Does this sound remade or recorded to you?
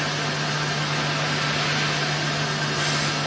recorded